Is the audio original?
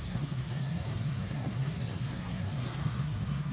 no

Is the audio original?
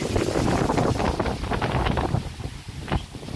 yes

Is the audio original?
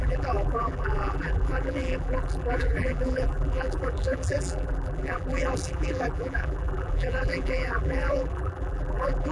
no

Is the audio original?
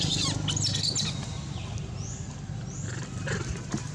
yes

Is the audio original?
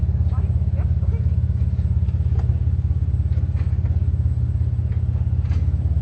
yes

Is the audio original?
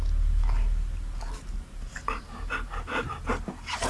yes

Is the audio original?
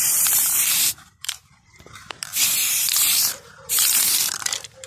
no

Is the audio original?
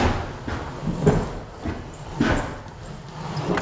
yes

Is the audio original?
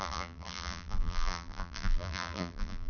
no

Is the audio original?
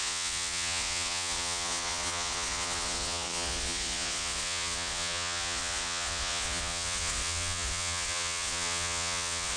no